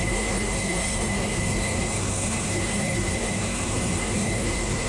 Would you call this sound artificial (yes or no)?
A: yes